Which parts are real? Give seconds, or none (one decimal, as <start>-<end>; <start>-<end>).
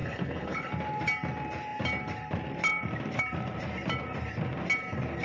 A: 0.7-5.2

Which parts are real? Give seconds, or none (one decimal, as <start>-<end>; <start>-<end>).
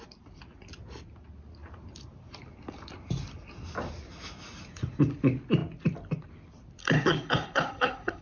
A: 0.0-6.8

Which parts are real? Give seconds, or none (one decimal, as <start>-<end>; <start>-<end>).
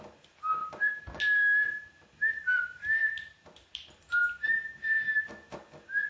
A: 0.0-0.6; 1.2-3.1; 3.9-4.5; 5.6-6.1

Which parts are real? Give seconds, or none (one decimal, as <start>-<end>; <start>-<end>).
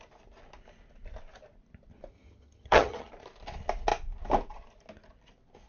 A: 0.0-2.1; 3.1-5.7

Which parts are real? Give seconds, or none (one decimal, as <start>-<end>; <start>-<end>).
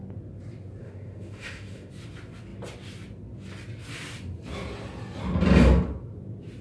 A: 0.0-0.8; 1.9-6.6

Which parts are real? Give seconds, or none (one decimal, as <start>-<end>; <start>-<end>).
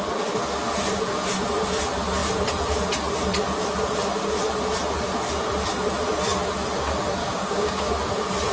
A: 0.0-7.2; 7.9-8.5